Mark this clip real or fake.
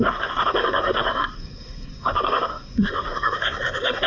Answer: fake